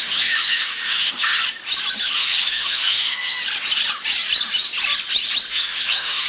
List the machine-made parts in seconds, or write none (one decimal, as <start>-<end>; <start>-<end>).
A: 0.0-1.3; 2.0-3.4; 5.5-6.3